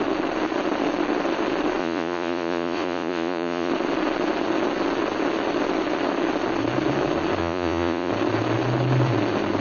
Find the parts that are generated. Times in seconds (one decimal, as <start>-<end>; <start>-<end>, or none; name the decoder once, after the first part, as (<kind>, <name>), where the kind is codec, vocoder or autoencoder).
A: 1.8-3.7 (vocoder, Vocos); 7.4-8.1